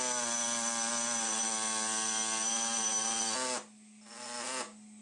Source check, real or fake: real